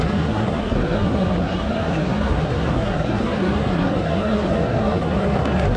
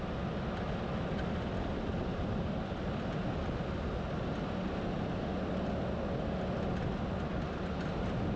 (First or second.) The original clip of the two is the second